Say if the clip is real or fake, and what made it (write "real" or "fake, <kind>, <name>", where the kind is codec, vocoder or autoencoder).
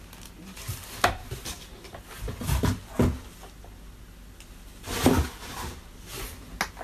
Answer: real